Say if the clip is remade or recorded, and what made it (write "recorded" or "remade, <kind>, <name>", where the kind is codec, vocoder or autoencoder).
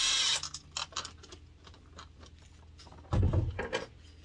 recorded